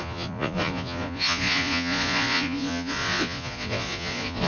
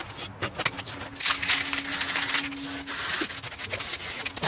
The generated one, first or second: first